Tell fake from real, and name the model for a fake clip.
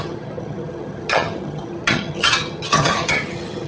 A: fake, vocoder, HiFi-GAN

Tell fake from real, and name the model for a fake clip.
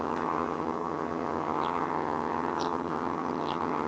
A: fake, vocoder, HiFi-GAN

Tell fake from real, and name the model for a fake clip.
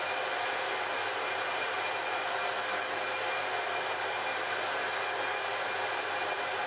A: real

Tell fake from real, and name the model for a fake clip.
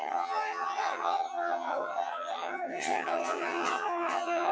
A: fake, vocoder, HiFi-GAN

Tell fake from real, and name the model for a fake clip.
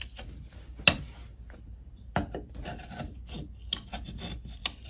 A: real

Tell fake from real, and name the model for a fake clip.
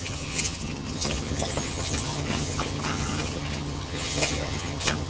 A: fake, vocoder, HiFi-GAN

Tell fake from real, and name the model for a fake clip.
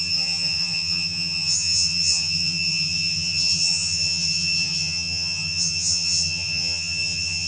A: fake, vocoder, HiFi-GAN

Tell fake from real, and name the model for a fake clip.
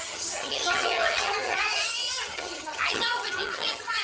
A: fake, vocoder, HiFi-GAN